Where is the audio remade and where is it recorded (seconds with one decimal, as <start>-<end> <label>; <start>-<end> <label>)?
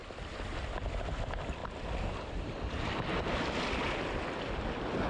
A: 0.0-5.1 recorded